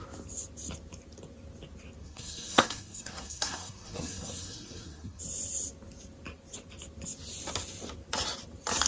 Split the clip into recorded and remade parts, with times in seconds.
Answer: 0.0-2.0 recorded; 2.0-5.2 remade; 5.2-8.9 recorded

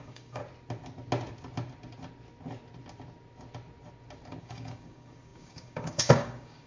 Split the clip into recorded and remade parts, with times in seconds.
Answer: 0.0-0.4 remade; 0.4-4.4 recorded; 4.4-6.7 remade